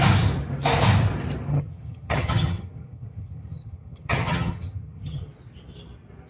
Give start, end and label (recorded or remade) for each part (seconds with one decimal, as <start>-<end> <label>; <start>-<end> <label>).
0.0-1.5 recorded; 1.5-5.3 remade; 5.3-6.3 recorded